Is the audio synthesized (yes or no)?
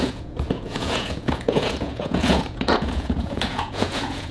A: yes